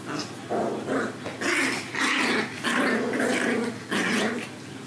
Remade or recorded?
recorded